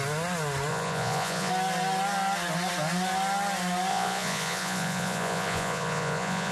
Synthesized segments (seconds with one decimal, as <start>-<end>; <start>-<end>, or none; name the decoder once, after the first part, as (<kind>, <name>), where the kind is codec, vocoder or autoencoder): 0.7-1.5 (vocoder, Vocos); 3.9-6.5